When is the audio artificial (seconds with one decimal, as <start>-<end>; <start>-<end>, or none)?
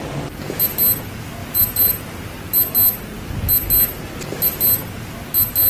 1.4-2.4